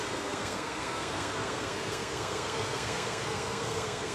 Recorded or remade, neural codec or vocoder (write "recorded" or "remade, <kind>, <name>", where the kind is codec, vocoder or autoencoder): remade, codec, SNAC